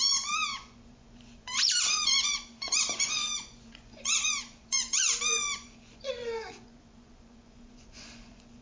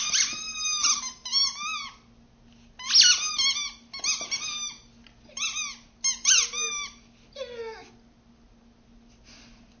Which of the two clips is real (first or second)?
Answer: second